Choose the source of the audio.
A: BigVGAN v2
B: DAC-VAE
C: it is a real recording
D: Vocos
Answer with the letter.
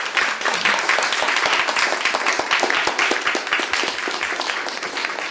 C